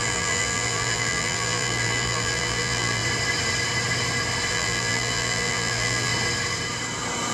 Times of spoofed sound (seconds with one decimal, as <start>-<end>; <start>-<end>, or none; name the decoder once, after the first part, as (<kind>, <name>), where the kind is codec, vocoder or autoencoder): 0.0-3.0 (vocoder, BigVGAN v2); 4.5-6.1